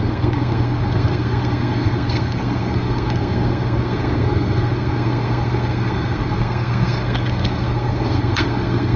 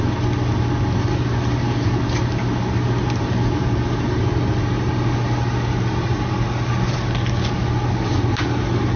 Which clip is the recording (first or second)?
second